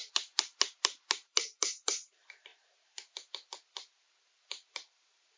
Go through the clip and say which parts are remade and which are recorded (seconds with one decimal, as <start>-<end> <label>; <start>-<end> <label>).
0.0-1.3 recorded; 1.3-2.5 remade; 2.5-4.7 recorded; 4.7-5.4 remade